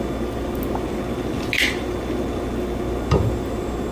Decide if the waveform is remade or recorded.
recorded